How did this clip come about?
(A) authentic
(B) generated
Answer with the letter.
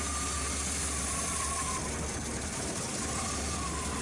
A